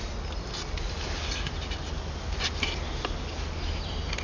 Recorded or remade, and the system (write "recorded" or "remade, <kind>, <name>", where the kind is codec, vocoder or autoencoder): recorded